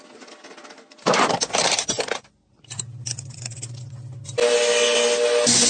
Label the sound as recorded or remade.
recorded